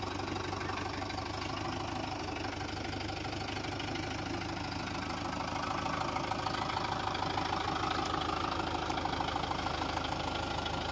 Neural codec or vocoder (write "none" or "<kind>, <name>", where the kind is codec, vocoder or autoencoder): none